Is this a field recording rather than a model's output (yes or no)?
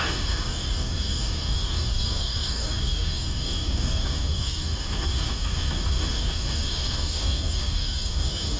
no